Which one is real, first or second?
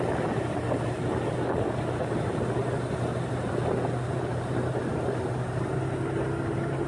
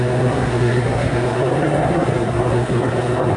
first